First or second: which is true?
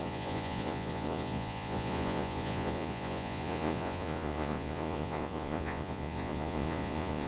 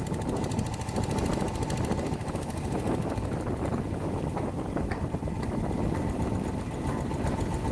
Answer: second